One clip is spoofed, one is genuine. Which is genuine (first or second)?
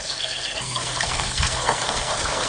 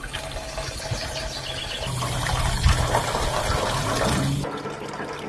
second